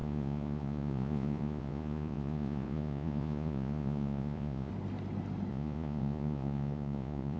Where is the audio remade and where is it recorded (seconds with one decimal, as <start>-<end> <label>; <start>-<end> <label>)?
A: 0.0-4.7 remade; 4.7-5.5 recorded; 5.5-7.4 remade